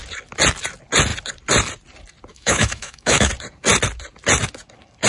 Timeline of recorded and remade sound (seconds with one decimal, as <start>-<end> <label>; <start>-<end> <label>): 0.0-2.3 recorded; 2.3-3.3 remade; 3.3-5.1 recorded